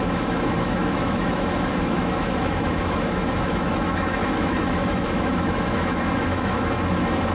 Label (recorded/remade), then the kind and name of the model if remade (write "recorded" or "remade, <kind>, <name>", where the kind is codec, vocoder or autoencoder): remade, autoencoder, DAC-VAE